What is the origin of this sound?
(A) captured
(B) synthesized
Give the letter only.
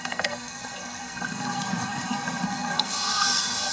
B